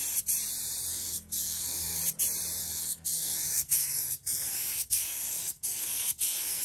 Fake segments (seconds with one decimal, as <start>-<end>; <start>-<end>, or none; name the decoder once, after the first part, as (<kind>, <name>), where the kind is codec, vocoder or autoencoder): 0.9-2.0 (codec, SNAC); 2.6-6.6